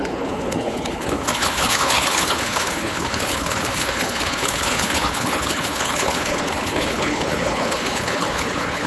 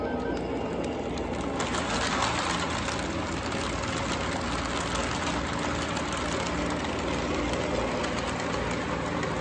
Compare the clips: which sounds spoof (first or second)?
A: first